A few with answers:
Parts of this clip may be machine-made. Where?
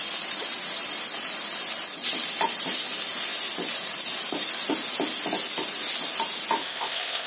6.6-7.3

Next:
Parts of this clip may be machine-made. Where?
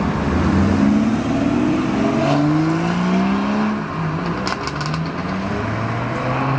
none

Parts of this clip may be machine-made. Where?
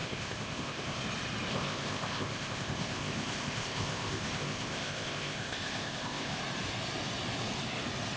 0.0-1.0; 1.5-6.4